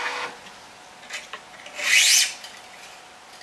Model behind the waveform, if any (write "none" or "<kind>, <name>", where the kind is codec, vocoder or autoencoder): none